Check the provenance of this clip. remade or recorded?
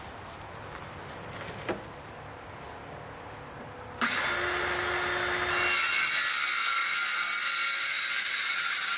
recorded